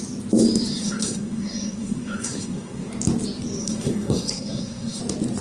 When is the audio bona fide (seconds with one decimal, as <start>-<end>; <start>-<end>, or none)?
0.0-0.8; 2.9-3.6; 5.0-5.4